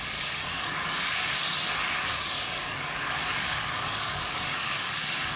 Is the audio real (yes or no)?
no